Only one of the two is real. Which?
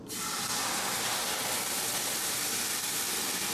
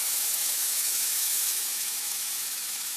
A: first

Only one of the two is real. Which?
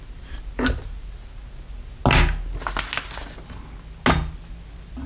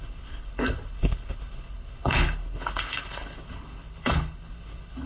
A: first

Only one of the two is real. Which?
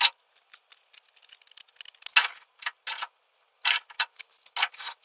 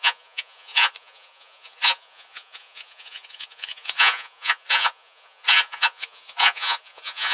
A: first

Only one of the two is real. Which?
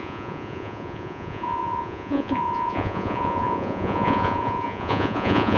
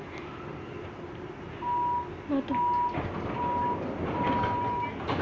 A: second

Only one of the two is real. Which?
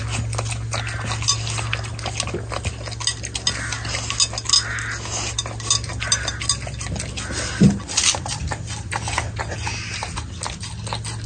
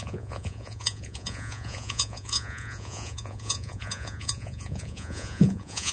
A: first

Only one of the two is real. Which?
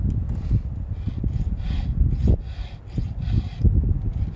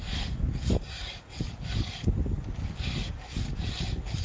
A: first